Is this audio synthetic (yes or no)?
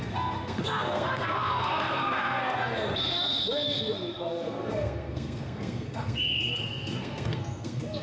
yes